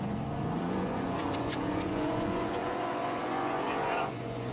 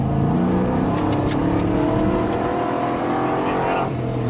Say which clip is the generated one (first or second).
first